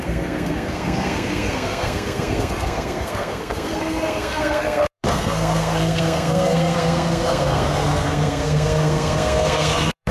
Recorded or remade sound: remade